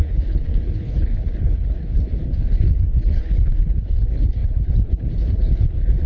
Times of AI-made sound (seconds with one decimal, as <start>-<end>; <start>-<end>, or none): 0.0-6.1